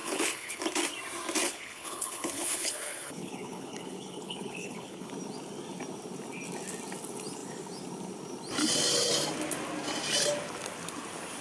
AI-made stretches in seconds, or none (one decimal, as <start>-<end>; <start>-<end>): 0.0-0.6; 1.4-5.1